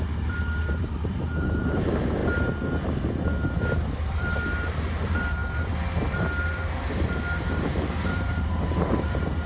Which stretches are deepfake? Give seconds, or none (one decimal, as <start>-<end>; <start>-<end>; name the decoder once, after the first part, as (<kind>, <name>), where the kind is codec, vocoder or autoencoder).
0.0-2.2 (vocoder, BigVGAN v2); 4.0-9.5